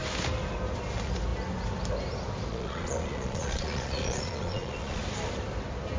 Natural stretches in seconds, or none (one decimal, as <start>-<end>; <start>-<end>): 0.0-2.5; 5.0-6.0